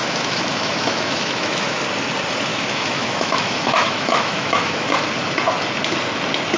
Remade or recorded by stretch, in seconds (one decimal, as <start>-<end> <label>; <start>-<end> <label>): 0.0-1.8 remade; 1.8-2.5 recorded; 2.5-4.9 remade; 4.9-6.6 recorded